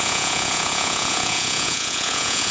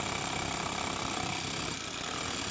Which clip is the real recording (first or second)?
second